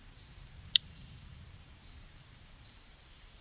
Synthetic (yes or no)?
yes